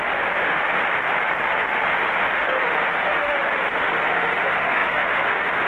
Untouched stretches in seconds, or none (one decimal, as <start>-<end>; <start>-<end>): 0.8-1.8